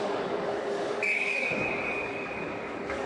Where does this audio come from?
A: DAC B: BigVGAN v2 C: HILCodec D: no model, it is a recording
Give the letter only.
A